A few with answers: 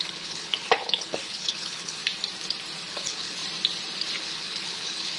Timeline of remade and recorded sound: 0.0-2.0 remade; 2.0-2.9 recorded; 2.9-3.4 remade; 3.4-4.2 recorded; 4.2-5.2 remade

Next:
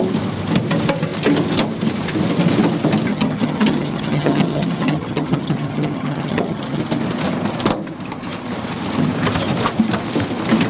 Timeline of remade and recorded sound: 0.0-3.1 recorded; 3.1-6.8 remade; 6.8-10.7 recorded

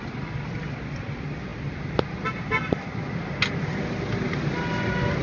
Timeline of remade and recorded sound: 0.0-5.2 recorded